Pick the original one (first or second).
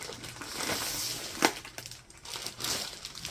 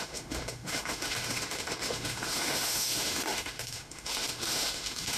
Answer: first